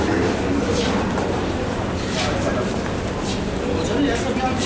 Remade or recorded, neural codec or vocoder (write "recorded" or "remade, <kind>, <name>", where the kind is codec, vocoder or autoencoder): recorded